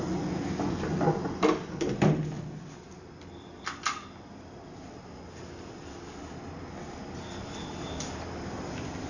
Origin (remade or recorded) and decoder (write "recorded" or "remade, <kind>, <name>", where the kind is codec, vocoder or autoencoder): recorded